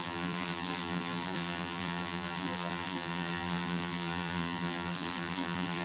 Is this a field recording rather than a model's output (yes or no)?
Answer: no